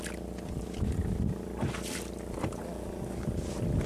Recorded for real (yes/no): yes